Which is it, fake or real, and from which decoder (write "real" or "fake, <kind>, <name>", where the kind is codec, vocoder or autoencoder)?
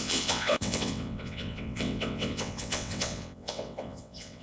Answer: fake, vocoder, WaveNeXt